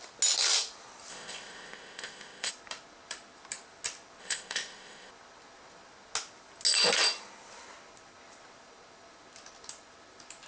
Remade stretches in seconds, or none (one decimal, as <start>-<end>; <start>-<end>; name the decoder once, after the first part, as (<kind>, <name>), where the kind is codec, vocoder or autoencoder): 1.1-2.5 (codec, ZipCodec); 4.2-5.1